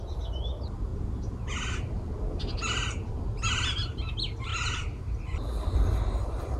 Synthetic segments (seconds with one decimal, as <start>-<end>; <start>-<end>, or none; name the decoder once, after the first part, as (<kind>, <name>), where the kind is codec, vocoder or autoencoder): none